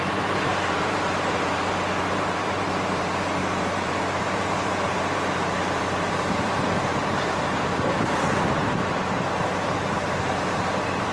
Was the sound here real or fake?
fake